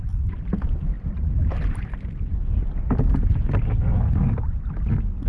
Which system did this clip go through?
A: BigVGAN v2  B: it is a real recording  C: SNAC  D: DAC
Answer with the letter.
B